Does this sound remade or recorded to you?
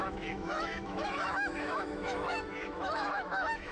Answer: remade